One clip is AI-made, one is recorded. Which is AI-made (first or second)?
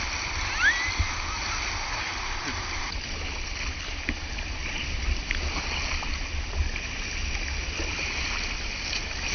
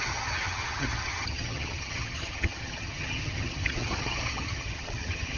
second